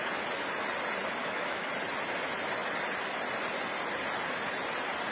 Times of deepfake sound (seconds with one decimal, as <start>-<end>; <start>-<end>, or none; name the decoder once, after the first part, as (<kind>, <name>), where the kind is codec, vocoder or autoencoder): 1.2-1.7 (autoencoder, DAC-VAE)